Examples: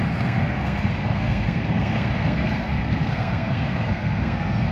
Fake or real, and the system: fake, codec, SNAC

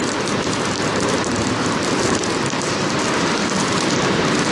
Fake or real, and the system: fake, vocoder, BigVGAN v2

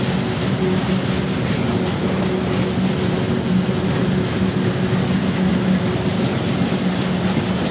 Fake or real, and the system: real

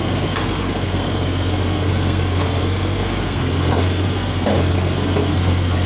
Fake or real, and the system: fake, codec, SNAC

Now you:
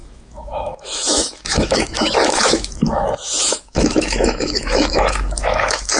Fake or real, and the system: fake, autoencoder, DAC-VAE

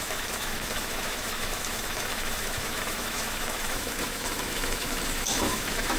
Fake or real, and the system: fake, autoencoder, DAC-VAE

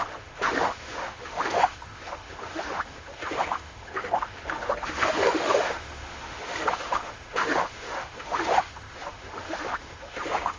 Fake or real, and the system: fake, autoencoder, DAC-VAE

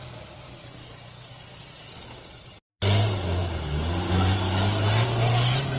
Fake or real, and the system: real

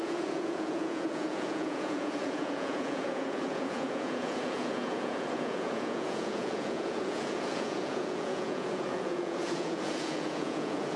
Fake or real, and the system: fake, vocoder, Vocos